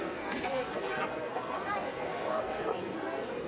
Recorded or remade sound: remade